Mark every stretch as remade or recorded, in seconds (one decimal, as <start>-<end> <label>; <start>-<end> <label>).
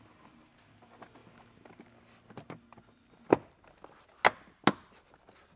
0.0-5.6 recorded